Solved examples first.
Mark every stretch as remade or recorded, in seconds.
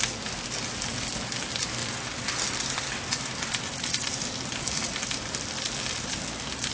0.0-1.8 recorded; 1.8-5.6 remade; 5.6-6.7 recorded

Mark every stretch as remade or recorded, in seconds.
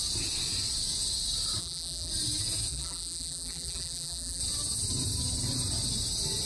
0.0-1.6 recorded; 1.6-2.1 remade; 2.1-2.7 recorded; 2.7-4.4 remade; 4.4-6.5 recorded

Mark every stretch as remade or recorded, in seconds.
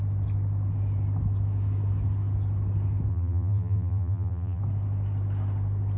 0.0-3.1 recorded; 3.1-4.6 remade; 4.6-6.0 recorded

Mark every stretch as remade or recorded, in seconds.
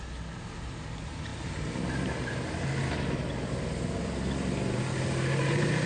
0.0-5.9 recorded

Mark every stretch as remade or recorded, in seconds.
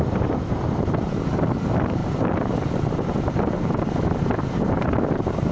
0.0-5.5 remade